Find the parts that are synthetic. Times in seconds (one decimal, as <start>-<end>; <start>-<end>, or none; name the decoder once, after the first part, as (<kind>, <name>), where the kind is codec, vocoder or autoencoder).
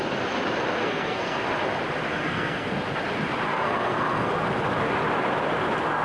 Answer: 0.8-1.5 (codec, SNAC); 2.1-2.7; 3.5-4.3